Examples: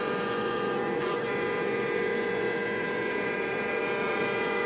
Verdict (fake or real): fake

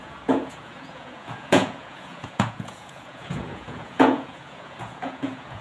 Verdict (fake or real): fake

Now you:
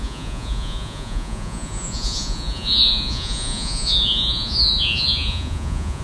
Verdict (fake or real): fake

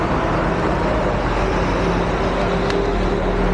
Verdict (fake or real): real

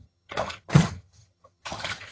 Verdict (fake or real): fake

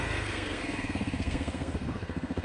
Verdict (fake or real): fake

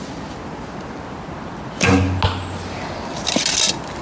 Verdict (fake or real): real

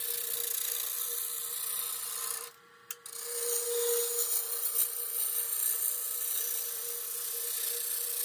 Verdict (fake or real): real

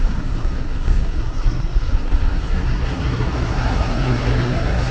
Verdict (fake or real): fake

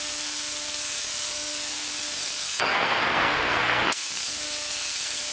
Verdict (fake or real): fake